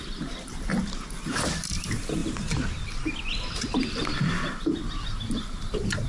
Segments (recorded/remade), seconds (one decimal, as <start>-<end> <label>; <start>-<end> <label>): 0.0-0.7 remade; 0.7-1.7 recorded; 1.7-2.2 remade; 2.2-4.2 recorded; 4.2-6.1 remade